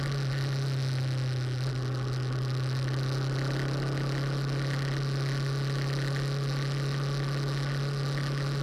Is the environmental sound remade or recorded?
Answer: recorded